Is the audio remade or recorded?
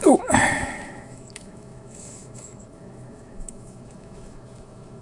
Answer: remade